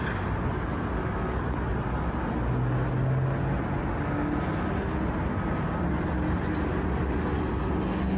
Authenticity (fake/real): real